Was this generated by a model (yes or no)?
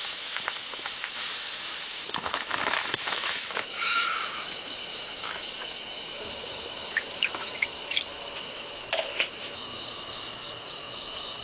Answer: yes